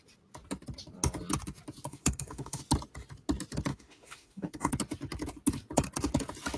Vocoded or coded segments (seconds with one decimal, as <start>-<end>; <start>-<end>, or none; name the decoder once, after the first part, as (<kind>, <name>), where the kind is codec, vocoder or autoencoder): 1.9-2.6 (autoencoder, DAC-VAE); 3.7-4.7